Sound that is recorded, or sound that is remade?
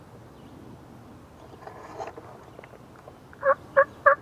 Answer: recorded